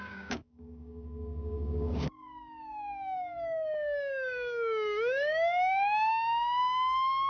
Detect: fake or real fake